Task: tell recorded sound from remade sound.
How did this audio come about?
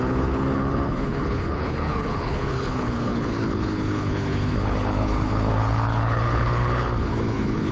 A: remade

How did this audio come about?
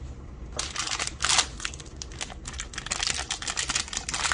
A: recorded